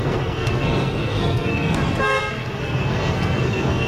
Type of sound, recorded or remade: remade